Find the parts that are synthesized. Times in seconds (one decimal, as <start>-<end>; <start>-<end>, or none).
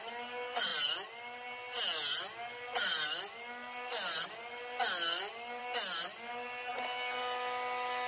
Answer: none